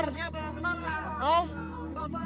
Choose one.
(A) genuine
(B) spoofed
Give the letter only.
B